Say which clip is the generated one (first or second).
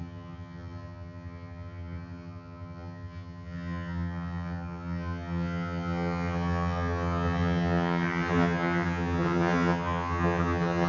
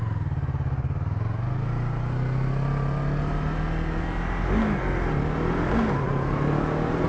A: first